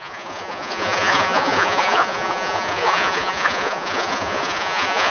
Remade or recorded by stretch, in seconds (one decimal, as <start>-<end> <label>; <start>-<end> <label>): 0.0-5.1 remade